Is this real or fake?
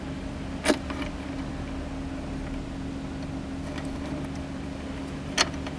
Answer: real